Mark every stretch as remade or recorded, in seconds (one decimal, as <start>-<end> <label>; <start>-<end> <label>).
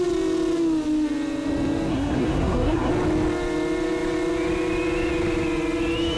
0.0-1.9 recorded; 1.9-2.9 remade; 2.9-6.2 recorded